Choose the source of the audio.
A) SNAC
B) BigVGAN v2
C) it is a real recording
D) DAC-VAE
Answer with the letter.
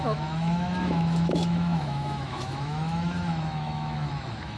D